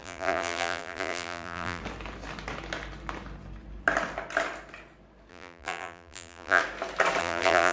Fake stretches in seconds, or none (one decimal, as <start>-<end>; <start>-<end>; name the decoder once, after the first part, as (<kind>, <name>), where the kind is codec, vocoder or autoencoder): 0.0-1.8 (vocoder, BigVGAN v2); 5.3-6.6; 7.2-7.7